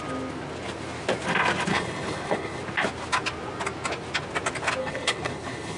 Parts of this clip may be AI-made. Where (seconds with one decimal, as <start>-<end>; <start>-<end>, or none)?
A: 1.7-2.6; 4.8-5.8